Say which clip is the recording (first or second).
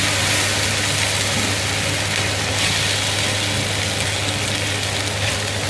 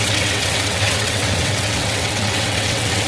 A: first